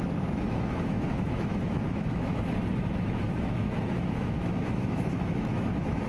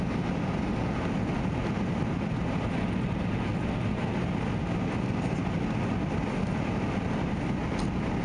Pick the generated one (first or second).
first